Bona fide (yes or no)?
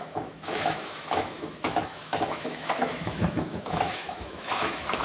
no